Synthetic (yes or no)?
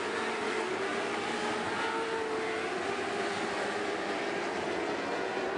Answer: no